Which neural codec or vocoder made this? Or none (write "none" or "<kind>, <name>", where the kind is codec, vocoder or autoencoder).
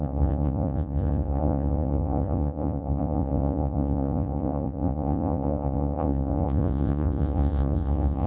vocoder, Vocos